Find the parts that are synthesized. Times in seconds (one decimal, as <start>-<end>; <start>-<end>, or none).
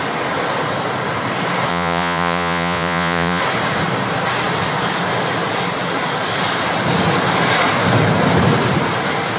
1.7-3.4